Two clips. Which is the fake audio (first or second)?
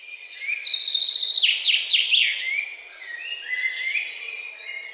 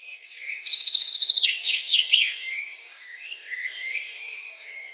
second